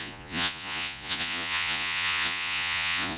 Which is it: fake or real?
fake